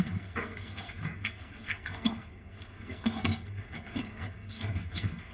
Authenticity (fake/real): fake